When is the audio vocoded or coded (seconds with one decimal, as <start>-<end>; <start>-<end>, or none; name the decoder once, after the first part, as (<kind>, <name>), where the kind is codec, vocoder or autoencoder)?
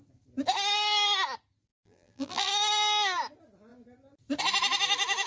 1.7-2.5 (vocoder, BigVGAN v2)